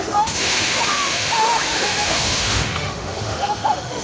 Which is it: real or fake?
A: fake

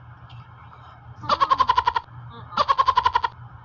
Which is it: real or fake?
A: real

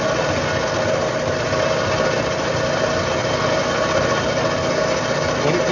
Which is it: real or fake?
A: real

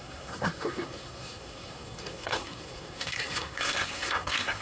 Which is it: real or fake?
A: fake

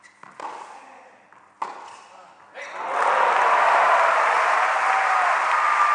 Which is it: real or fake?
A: real